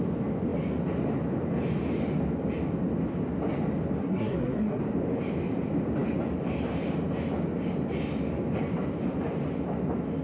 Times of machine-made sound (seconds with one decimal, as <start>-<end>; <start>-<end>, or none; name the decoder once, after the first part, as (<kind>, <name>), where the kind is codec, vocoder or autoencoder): 4.0-4.8 (codec, SNAC)